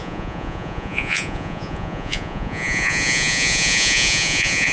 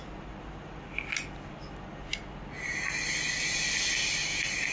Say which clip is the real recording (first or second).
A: second